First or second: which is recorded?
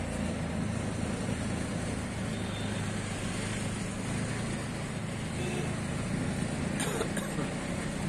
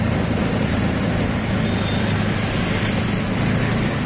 first